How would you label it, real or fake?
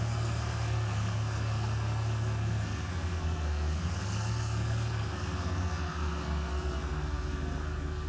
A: fake